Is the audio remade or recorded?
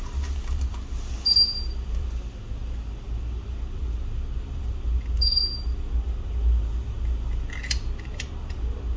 recorded